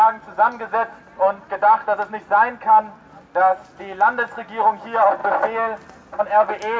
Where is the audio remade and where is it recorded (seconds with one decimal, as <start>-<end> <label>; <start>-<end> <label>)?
0.0-6.8 recorded

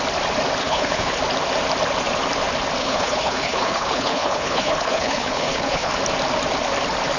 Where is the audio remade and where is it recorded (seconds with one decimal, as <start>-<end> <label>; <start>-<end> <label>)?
0.0-0.6 recorded; 0.6-1.2 remade; 1.2-2.8 recorded; 2.8-5.9 remade; 5.9-7.2 recorded

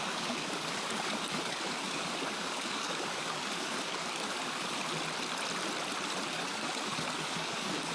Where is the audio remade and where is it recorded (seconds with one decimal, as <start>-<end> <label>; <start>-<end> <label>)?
0.0-4.8 remade; 4.8-6.3 recorded; 6.3-7.9 remade

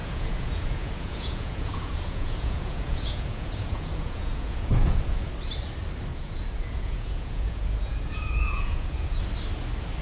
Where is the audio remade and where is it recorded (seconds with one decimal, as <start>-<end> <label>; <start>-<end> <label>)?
0.0-5.3 remade; 5.3-6.1 recorded; 6.1-9.2 remade; 9.2-10.0 recorded

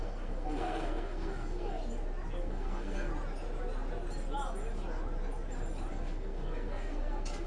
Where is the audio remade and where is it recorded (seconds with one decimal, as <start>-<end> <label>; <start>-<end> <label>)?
0.0-1.8 remade; 1.8-2.4 recorded; 2.4-3.1 remade; 3.1-5.9 recorded; 5.9-7.5 remade

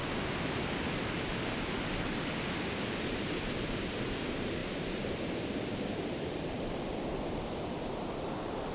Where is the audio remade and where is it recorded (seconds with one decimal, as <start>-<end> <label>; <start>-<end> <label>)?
0.0-8.7 recorded

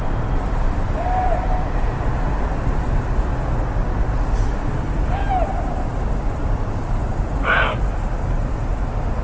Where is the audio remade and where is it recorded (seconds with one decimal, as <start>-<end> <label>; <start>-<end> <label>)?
0.0-3.3 remade; 3.3-4.5 recorded; 4.5-9.2 remade

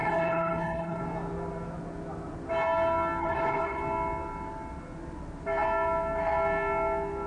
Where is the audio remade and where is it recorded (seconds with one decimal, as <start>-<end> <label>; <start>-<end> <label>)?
0.0-1.0 remade; 1.0-3.2 recorded; 3.2-3.8 remade; 3.8-7.3 recorded